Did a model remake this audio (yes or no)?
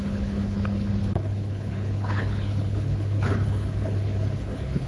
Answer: yes